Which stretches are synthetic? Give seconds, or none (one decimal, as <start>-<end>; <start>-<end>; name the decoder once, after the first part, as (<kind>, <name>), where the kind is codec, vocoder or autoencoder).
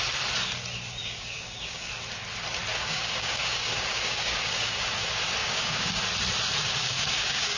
1.0-1.9 (codec, DAC); 2.7-4.9; 5.4-6.0; 6.6-7.6